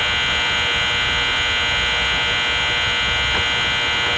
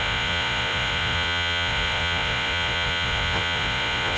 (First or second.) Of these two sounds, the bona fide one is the first